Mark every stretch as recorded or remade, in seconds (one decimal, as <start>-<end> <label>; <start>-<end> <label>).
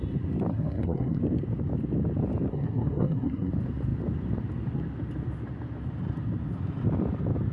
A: 0.0-0.5 recorded; 0.5-1.2 remade; 1.2-2.5 recorded; 2.5-3.5 remade; 3.5-7.5 recorded